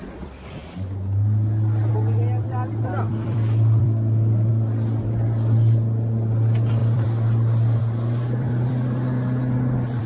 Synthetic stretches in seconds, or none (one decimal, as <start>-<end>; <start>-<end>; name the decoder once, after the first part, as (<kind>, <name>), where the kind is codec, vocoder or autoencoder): 0.0-0.6 (vocoder, BigVGAN v2); 1.9-4.5; 6.3-10.1